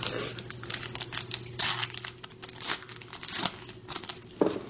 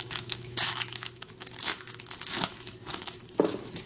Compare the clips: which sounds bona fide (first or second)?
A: first